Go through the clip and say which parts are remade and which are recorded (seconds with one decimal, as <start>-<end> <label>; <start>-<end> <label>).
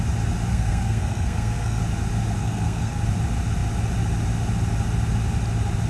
0.0-0.5 recorded; 0.5-1.8 remade; 1.8-2.4 recorded; 2.4-3.0 remade; 3.0-5.9 recorded